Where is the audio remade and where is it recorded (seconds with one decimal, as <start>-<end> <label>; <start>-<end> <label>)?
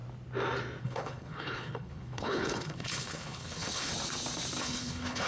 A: 0.0-0.8 recorded; 0.8-3.9 remade; 3.9-4.6 recorded; 4.6-5.3 remade